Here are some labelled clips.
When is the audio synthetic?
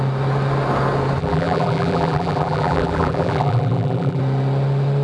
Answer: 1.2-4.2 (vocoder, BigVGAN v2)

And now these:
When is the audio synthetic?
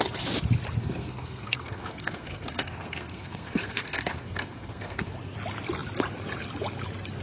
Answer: 0.8-5.1 (codec, SNAC)